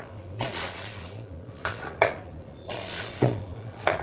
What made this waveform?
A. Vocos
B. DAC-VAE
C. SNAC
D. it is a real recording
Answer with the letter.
A